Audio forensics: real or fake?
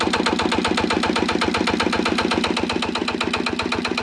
real